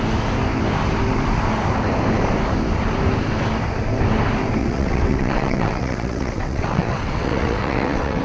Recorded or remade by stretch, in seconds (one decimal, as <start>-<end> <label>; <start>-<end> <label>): 0.0-4.6 recorded; 4.6-8.2 remade